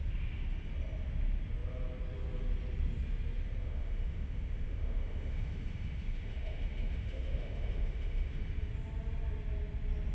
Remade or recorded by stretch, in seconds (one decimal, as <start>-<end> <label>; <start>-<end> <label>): 0.0-3.6 recorded; 3.6-8.4 remade; 8.4-10.1 recorded